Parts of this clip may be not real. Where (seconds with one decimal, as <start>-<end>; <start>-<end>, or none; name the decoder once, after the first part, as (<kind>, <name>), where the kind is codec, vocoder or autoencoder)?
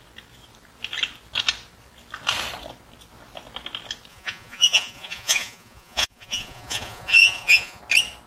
4.1-7.8 (vocoder, Vocos)